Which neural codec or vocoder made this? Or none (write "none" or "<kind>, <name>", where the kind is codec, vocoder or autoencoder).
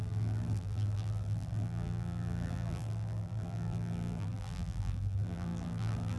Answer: vocoder, BigVGAN v2